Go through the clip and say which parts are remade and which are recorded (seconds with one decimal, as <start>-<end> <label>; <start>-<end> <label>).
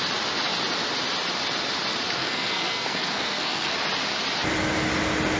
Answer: 0.0-2.2 recorded; 2.2-3.7 remade; 3.7-5.4 recorded